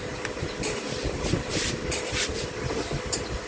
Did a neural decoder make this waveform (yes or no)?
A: no